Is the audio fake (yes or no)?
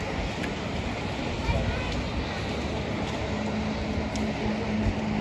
no